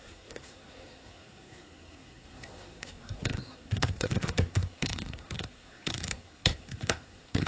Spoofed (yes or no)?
yes